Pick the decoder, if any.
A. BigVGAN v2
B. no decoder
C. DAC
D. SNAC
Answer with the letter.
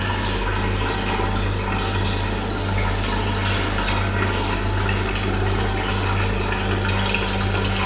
B